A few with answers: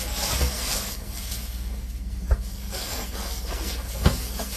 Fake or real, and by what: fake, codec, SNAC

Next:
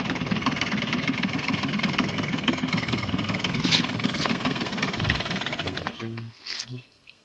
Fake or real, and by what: fake, codec, SNAC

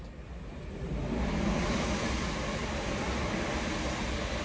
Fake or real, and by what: real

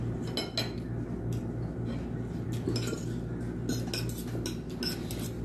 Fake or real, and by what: real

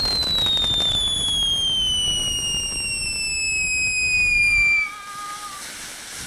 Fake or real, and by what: real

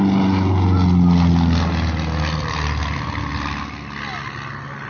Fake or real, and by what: real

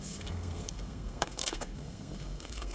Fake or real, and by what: fake, codec, SNAC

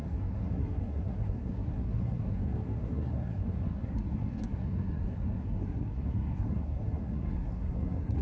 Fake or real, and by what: fake, codec, SNAC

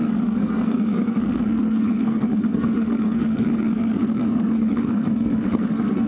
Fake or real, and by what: fake, codec, SNAC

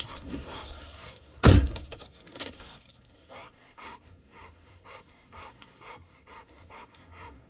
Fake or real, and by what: fake, codec, SNAC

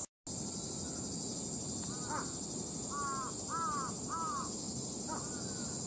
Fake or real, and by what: real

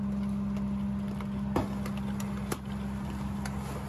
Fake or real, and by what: real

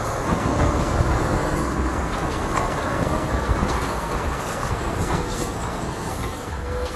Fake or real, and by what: fake, codec, SNAC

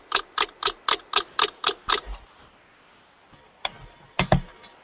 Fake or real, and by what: real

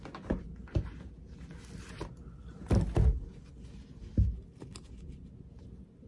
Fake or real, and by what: real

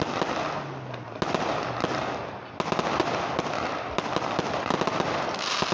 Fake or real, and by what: real